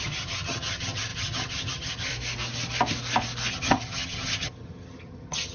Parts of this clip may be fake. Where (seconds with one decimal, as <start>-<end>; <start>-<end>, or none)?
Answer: 0.0-2.1; 3.5-5.5